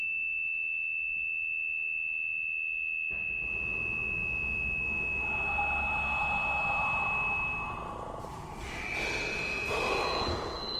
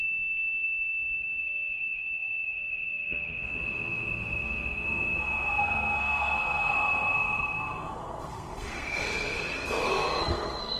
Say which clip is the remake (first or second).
second